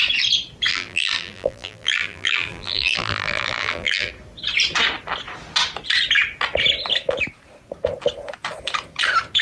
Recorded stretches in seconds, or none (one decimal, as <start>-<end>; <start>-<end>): 0.0-0.7; 4.1-9.4